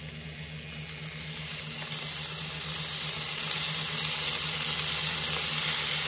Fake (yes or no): no